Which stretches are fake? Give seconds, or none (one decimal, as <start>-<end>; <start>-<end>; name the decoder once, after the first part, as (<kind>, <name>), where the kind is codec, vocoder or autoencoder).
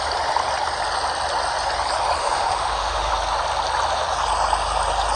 2.2-3.1 (autoencoder, DAC-VAE)